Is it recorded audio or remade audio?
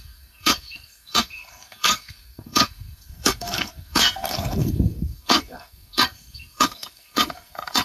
remade